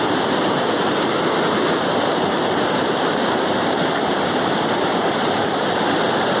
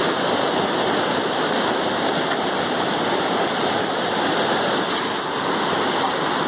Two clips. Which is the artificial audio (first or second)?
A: first